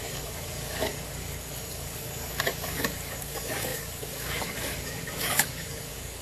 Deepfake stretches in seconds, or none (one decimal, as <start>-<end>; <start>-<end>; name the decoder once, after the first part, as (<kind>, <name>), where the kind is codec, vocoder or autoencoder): 0.0-6.2 (codec, DAC)